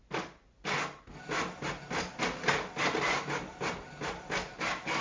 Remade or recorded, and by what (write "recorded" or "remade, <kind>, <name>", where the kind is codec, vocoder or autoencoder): recorded